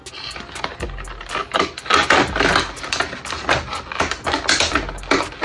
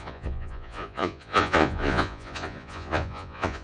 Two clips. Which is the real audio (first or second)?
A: first